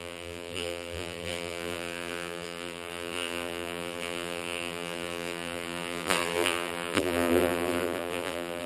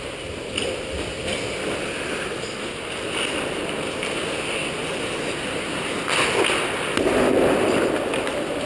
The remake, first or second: first